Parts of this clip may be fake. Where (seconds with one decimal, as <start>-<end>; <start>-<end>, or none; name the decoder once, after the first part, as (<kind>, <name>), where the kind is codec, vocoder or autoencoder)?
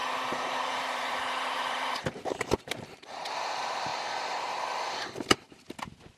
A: 0.0-3.9 (vocoder, BigVGAN v2)